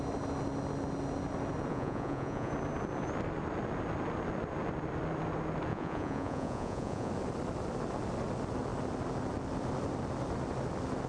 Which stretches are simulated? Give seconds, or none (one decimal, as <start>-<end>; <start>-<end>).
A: 1.7-2.5; 5.7-7.1